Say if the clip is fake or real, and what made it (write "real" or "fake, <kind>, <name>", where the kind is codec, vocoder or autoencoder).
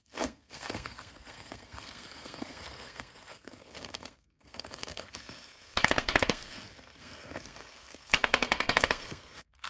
fake, codec, SNAC